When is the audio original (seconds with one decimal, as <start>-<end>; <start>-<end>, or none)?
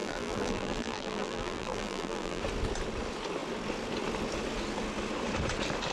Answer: 2.4-5.9